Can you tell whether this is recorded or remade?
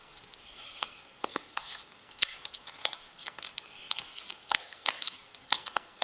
remade